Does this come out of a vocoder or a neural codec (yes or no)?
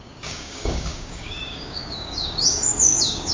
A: yes